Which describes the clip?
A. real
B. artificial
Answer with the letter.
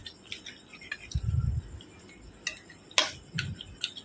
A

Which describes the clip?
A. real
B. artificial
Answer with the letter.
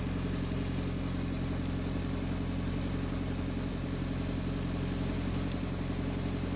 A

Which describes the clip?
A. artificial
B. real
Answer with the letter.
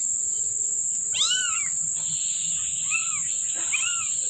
B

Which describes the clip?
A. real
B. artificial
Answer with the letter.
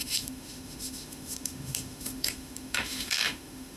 B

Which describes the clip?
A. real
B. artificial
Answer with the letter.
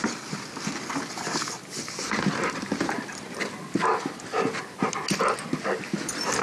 A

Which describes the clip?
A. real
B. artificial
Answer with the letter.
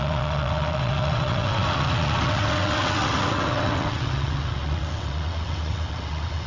B